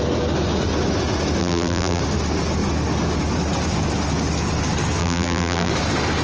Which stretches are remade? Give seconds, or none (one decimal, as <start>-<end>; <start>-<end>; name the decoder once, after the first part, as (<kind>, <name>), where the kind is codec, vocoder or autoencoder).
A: 1.4-2.0 (vocoder, BigVGAN v2); 5.0-5.7